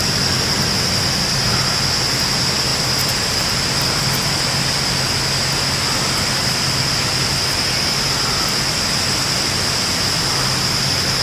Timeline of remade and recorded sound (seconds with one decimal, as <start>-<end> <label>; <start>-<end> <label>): 0.0-11.2 recorded